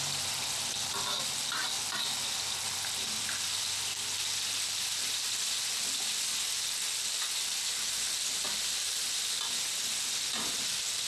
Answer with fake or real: real